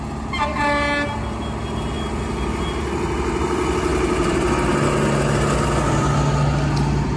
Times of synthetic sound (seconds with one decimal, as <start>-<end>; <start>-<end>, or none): 3.9-4.5